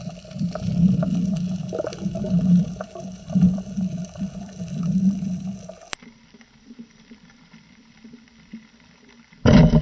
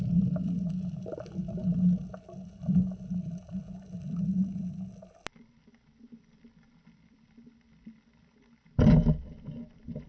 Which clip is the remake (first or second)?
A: first